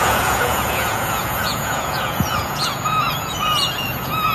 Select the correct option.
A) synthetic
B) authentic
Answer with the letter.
A